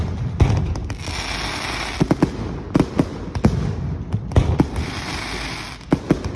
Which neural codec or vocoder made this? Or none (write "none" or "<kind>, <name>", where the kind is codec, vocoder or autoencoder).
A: none